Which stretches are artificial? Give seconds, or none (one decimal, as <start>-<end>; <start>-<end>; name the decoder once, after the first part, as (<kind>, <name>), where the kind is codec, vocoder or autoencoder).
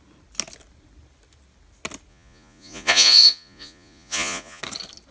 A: 2.1-4.6 (vocoder, Vocos)